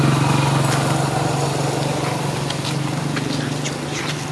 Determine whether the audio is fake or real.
real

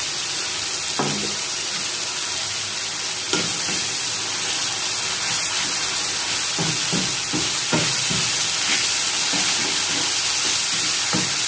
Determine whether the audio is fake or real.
real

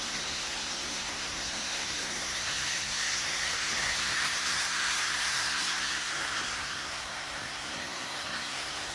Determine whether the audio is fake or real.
fake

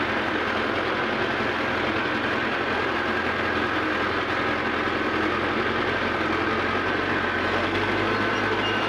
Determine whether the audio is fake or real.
real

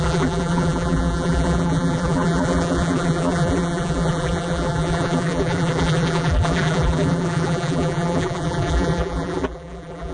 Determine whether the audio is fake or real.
fake